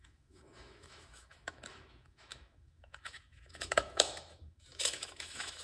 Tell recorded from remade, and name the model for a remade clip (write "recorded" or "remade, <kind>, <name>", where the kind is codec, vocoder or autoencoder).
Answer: remade, autoencoder, DAC-VAE